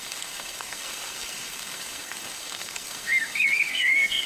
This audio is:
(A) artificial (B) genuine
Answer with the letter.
A